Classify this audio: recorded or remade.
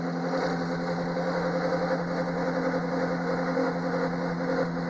recorded